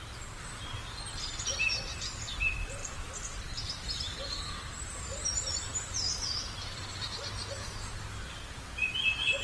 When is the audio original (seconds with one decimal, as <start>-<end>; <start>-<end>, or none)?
0.0-2.8; 6.6-9.4